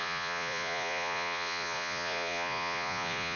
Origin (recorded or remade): remade